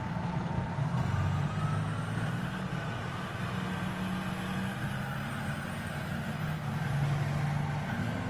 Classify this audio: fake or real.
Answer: real